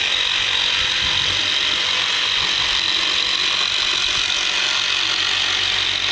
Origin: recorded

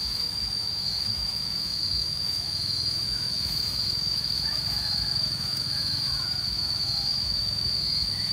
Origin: remade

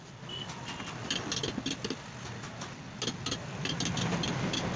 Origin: recorded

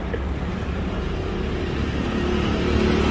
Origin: recorded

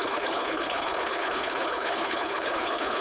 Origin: remade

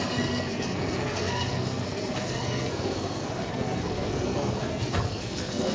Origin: remade